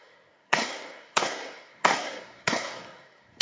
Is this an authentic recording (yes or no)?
no